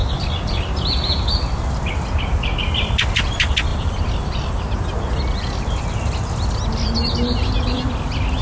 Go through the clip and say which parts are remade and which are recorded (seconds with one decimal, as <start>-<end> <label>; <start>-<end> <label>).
0.0-3.7 recorded; 3.7-5.2 remade; 5.2-8.4 recorded